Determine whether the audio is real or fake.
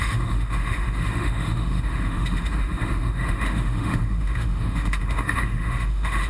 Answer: fake